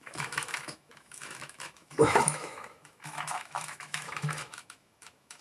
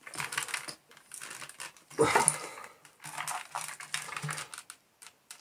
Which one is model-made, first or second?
first